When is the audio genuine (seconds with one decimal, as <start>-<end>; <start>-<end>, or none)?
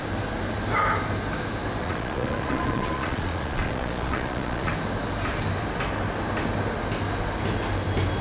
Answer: 0.0-1.8; 4.7-8.2